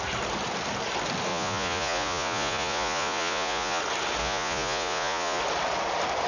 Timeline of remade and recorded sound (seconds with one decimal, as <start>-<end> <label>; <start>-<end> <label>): 0.0-1.3 recorded; 1.3-3.8 remade; 3.8-4.2 recorded; 4.2-5.4 remade; 5.4-6.3 recorded